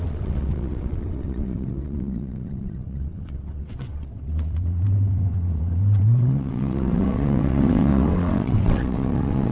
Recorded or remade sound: remade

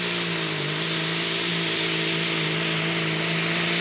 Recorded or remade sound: recorded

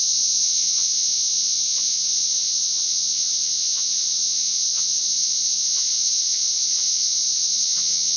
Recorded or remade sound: remade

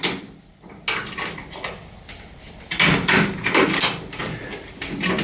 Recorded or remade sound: recorded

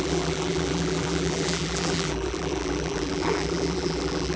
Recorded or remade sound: remade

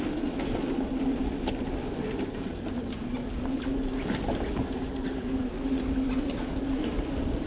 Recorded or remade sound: recorded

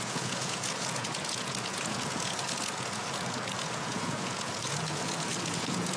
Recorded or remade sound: remade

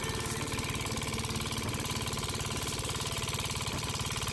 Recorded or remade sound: recorded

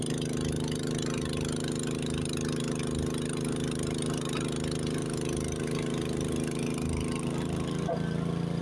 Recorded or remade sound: recorded